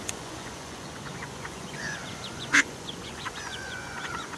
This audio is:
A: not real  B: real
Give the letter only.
A